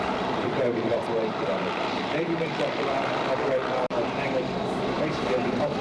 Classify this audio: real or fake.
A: fake